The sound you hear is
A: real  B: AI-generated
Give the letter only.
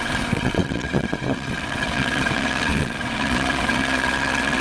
B